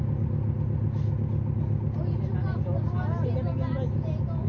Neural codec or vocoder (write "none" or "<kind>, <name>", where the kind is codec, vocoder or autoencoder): none